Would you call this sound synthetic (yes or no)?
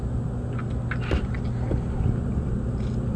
no